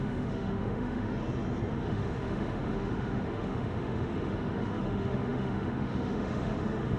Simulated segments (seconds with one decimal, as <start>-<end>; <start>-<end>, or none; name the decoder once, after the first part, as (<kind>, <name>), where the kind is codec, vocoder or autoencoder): 0.0-1.2 (autoencoder, DAC-VAE); 1.7-7.0